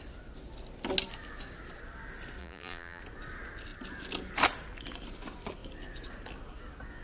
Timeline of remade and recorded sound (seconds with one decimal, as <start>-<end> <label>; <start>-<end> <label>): 0.0-2.4 recorded; 2.4-3.0 remade; 3.0-7.0 recorded